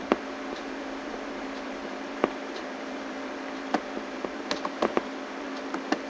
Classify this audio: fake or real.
fake